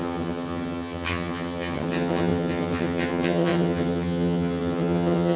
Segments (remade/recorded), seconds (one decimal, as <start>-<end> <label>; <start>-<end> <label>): 0.0-5.4 remade